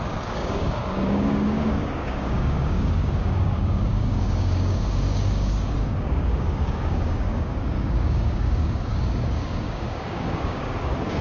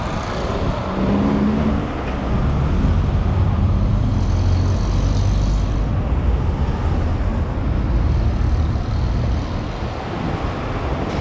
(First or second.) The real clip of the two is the second